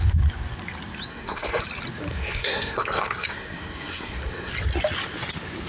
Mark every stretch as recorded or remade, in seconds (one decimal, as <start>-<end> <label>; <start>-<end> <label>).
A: 0.0-1.1 recorded; 1.1-1.6 remade; 1.6-2.1 recorded; 2.1-4.5 remade; 4.5-5.7 recorded